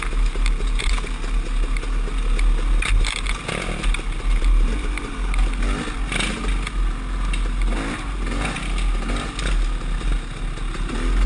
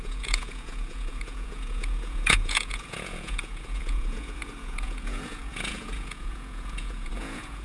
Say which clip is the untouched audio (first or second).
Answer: first